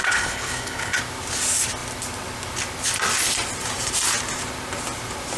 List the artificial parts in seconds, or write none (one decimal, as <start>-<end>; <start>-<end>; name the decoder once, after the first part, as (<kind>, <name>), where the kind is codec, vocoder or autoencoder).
0.0-1.0 (codec, HILCodec)